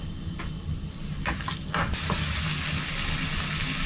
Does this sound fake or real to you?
real